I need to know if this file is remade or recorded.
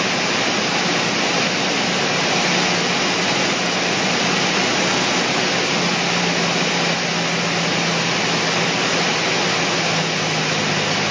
recorded